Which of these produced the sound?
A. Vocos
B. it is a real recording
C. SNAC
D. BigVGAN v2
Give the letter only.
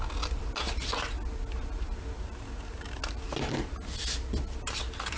B